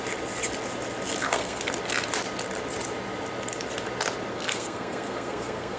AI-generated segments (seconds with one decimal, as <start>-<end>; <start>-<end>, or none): 1.2-1.7; 4.3-5.8